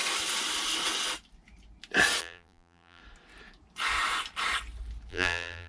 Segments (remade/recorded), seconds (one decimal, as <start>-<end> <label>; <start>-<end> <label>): 0.0-2.2 recorded; 2.2-3.0 remade; 3.0-5.1 recorded; 5.1-5.7 remade